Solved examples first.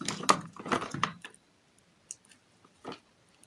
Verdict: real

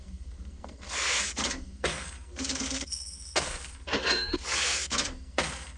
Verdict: fake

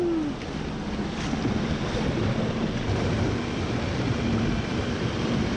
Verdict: real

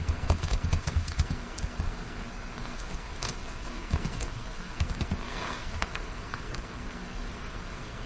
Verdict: fake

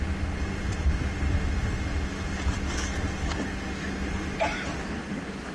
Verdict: real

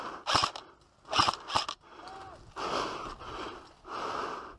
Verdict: real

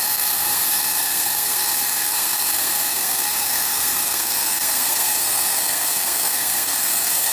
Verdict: fake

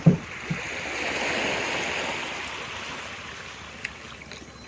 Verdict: real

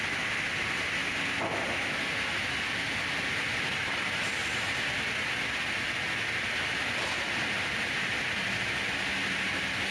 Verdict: real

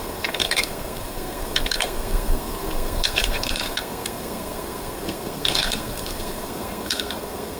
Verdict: fake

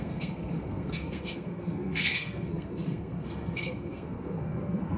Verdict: fake